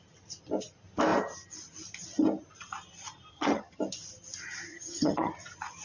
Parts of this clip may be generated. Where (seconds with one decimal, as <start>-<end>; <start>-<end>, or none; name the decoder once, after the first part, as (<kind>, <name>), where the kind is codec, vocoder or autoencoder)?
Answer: 3.3-3.8 (vocoder, HiFi-GAN); 4.7-5.3